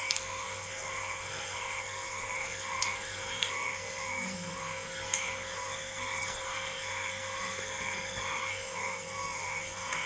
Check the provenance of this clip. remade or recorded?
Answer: remade